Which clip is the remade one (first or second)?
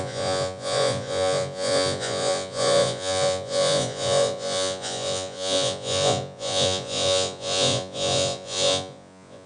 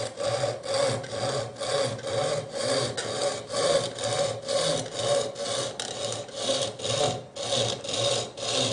first